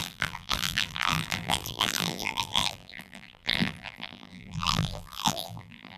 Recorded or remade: remade